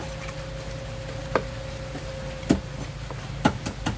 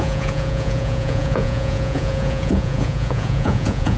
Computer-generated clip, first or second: second